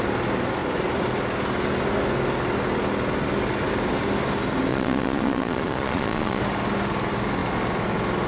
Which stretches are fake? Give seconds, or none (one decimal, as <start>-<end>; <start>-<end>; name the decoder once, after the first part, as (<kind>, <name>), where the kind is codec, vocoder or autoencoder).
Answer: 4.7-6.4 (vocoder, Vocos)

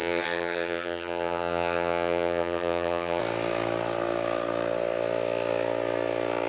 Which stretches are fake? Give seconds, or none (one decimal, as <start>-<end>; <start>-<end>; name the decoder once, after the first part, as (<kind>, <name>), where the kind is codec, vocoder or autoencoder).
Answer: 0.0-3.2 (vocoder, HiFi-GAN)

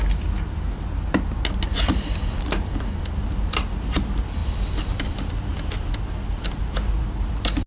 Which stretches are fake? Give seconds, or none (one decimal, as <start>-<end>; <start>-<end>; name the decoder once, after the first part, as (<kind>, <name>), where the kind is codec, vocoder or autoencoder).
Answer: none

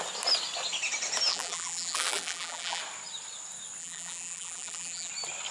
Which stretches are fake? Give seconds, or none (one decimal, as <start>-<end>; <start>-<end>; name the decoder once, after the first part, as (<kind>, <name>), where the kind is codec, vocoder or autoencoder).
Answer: 1.3-2.8 (vocoder, BigVGAN v2); 3.8-5.1

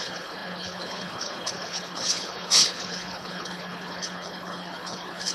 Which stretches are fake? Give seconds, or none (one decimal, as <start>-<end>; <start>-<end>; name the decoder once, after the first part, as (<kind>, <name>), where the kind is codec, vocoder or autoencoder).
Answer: 0.0-5.3 (codec, HILCodec)